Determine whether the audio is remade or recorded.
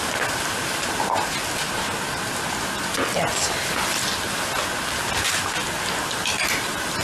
recorded